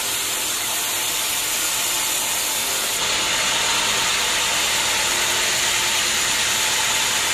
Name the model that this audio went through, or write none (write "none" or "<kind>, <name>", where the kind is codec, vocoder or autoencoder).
none